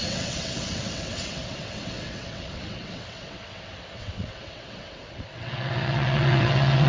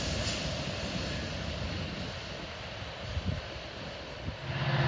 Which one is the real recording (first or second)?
second